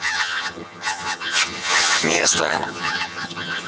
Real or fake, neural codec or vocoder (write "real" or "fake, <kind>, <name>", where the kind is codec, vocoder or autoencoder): fake, vocoder, HiFi-GAN